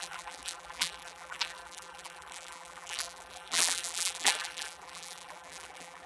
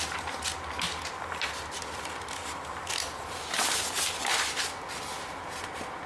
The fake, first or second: first